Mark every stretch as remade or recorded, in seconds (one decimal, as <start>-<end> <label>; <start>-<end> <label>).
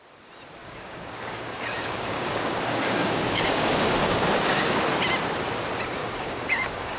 0.0-0.6 recorded; 0.6-4.8 remade; 4.8-6.0 recorded; 6.0-7.0 remade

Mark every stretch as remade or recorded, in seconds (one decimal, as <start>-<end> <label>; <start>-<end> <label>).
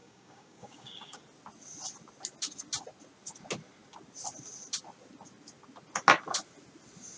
0.0-1.2 remade; 1.2-7.2 recorded